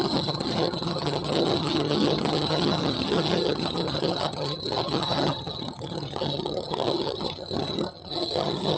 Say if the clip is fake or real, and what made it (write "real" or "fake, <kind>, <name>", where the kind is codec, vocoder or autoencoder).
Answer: fake, vocoder, HiFi-GAN